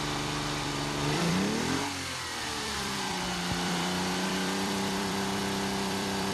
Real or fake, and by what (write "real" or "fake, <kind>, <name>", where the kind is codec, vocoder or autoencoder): fake, vocoder, BigVGAN v2